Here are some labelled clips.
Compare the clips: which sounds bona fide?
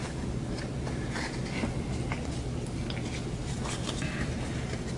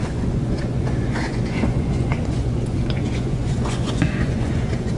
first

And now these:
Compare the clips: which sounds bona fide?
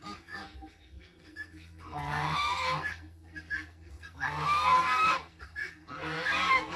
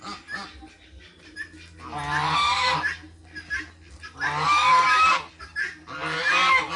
second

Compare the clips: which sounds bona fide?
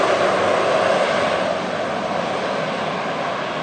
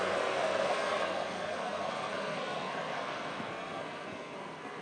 first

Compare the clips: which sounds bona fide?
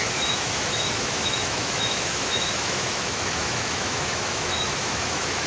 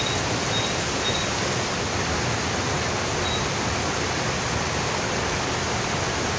second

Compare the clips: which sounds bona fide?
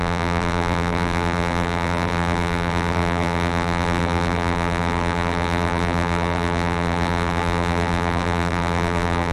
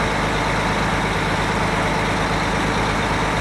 second